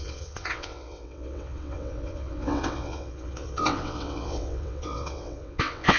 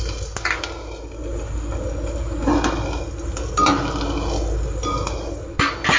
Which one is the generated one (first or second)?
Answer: first